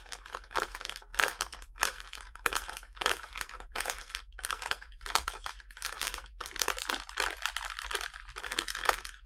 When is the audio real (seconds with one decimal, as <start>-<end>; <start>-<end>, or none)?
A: 6.7-8.4